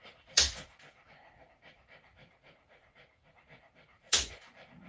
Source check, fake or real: fake